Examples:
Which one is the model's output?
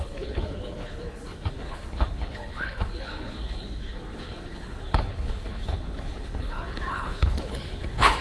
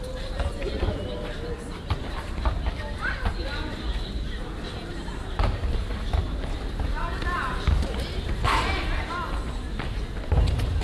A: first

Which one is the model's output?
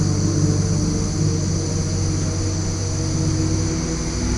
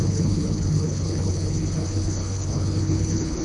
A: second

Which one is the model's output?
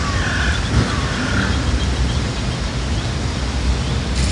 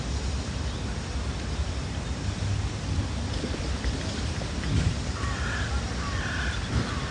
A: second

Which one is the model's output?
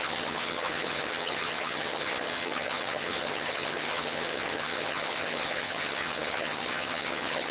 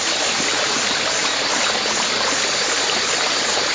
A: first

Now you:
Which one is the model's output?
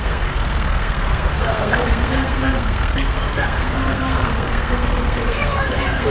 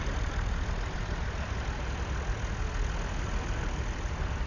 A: first